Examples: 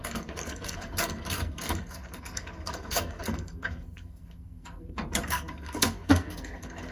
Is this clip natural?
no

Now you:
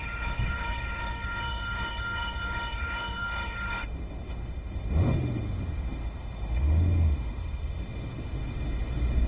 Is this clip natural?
no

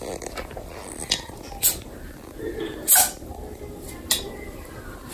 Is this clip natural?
yes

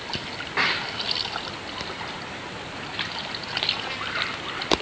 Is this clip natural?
yes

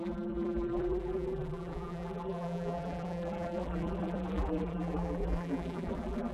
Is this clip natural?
no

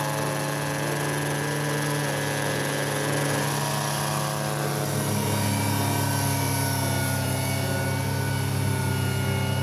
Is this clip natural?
yes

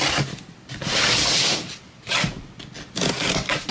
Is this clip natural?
yes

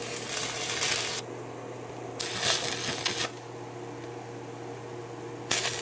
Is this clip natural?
yes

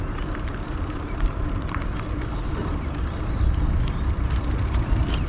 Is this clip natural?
no